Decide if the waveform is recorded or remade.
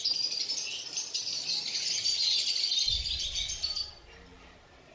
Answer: recorded